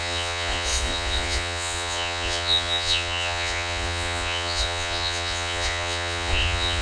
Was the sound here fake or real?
fake